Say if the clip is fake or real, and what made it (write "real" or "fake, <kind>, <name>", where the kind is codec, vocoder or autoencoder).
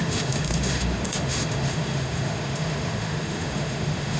fake, autoencoder, DAC-VAE